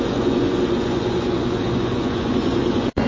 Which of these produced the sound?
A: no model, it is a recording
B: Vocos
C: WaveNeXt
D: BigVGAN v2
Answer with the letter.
B